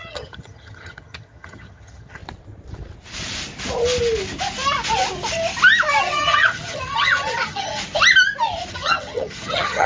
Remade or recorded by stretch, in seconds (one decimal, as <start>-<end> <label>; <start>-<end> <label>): 0.0-2.2 remade; 2.2-6.0 recorded; 6.0-7.8 remade; 7.8-8.7 recorded; 8.7-9.9 remade